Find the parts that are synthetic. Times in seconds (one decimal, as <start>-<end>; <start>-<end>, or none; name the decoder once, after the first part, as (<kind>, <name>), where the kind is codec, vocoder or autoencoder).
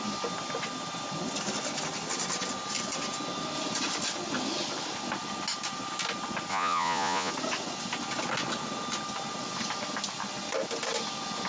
6.5-7.3 (vocoder, Vocos)